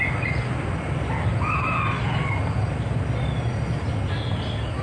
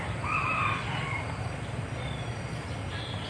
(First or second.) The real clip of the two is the first